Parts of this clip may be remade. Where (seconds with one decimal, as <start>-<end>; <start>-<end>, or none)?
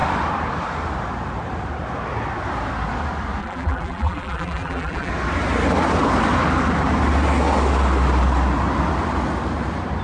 3.4-5.1